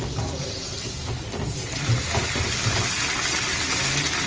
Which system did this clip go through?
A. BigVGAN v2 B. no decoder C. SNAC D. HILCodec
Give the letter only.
B